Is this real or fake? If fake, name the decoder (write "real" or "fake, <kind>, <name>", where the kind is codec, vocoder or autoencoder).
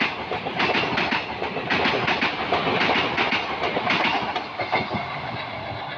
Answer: real